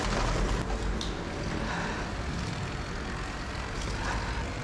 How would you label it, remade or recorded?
recorded